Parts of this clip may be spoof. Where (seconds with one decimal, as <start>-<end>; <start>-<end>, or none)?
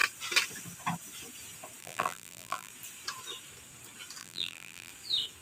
1.8-2.7; 4.2-4.9